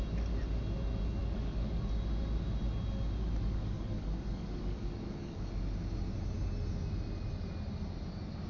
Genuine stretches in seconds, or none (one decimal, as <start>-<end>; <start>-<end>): 0.0-1.2; 1.8-3.5; 5.5-8.5